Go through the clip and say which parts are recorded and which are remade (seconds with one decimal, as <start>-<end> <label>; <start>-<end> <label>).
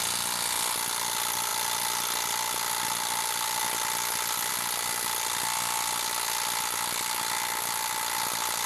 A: 0.0-8.7 recorded